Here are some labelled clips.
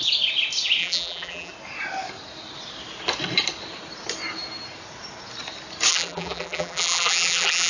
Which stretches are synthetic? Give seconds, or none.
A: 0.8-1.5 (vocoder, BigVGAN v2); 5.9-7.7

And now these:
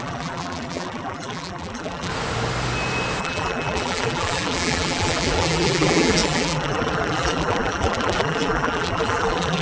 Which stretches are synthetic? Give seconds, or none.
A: 0.0-2.1 (vocoder, BigVGAN v2); 3.2-9.6

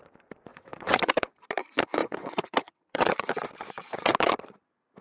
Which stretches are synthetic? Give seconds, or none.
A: 0.5-1.3 (vocoder, WaveNeXt); 2.0-3.4; 3.8-4.3

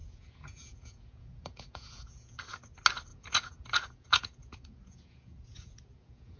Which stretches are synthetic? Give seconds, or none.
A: 0.0-2.4 (vocoder, Vocos); 3.1-6.4

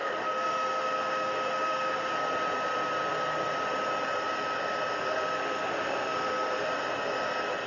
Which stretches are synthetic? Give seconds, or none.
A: 0.0-2.1 (autoencoder, DAC-VAE); 5.0-6.7

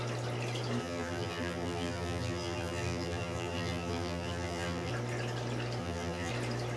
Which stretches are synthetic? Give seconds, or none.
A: 0.8-4.9 (vocoder, BigVGAN v2); 5.8-6.3

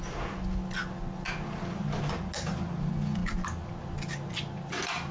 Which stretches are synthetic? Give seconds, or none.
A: none